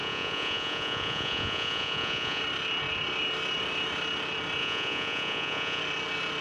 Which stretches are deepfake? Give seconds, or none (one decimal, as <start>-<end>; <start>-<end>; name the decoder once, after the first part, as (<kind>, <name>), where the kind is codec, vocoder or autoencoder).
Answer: 0.0-2.4 (vocoder, Vocos); 4.6-5.8